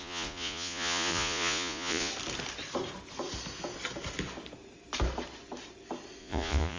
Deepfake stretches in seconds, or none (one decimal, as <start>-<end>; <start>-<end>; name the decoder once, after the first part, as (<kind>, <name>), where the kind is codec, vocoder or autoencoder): 0.0-2.1 (vocoder, Vocos); 6.2-6.8